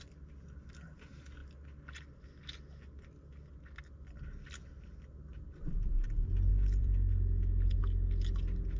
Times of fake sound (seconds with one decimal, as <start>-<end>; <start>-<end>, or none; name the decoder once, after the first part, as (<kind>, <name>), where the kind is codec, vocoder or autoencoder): 6.5-7.8 (vocoder, BigVGAN v2)